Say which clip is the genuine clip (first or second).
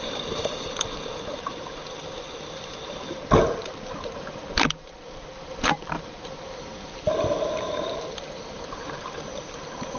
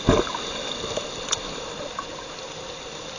second